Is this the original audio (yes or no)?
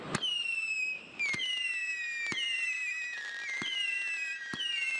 yes